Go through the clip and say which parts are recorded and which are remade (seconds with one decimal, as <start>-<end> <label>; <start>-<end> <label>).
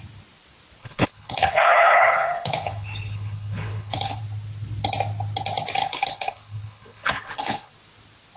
0.0-0.8 recorded; 0.8-4.2 remade; 4.2-5.8 recorded; 5.8-7.7 remade; 7.7-8.4 recorded